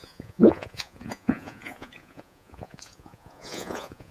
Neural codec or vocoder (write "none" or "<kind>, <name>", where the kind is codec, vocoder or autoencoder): vocoder, Vocos